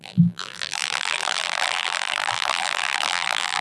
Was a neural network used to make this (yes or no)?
yes